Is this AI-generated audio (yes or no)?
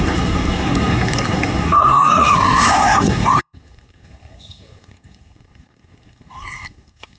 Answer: yes